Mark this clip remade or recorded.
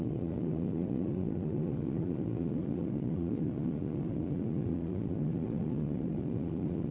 remade